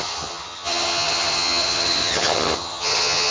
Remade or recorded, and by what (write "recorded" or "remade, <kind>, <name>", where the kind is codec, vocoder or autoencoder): remade, vocoder, HiFi-GAN